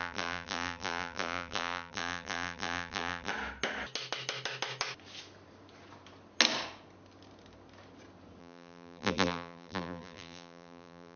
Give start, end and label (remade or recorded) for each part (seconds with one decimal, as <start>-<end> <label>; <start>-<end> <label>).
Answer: 0.0-3.3 remade; 3.3-8.4 recorded; 8.4-11.2 remade